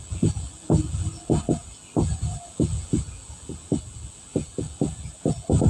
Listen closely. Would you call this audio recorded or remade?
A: recorded